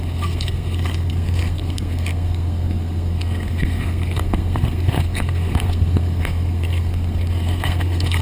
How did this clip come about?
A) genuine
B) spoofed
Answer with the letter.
B